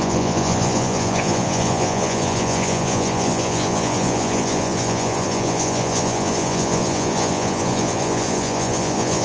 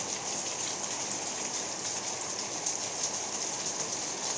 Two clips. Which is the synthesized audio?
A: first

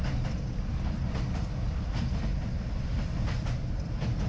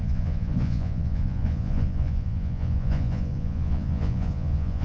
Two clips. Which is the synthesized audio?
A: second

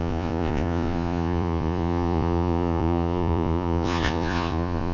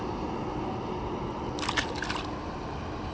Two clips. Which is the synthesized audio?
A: first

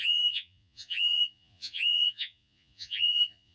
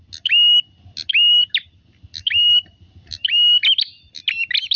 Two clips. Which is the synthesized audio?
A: first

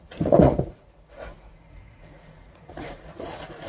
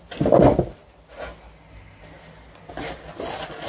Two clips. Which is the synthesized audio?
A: first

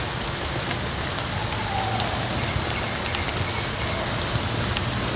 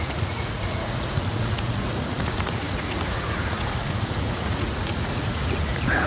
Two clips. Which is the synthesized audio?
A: second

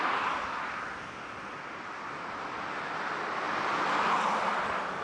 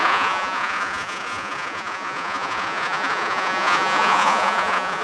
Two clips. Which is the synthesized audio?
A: second